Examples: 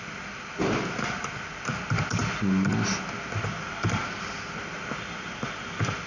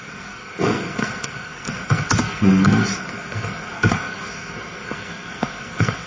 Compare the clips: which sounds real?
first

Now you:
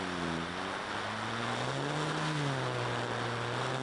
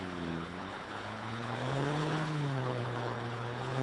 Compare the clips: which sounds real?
first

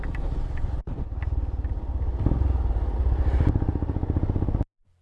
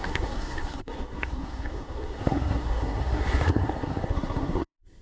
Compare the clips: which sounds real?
first